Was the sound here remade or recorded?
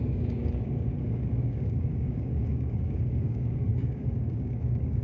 remade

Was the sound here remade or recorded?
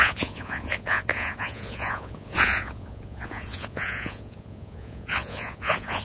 remade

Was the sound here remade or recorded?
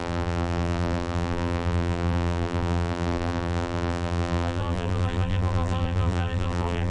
remade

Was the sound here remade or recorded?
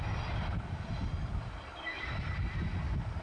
recorded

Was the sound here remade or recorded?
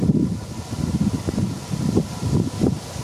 recorded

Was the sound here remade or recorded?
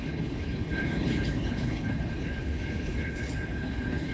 remade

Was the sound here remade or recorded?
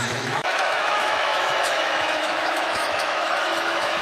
remade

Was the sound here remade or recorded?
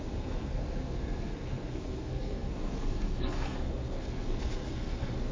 remade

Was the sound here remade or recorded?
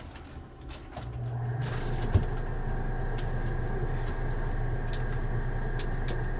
recorded